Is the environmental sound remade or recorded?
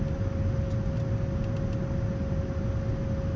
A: recorded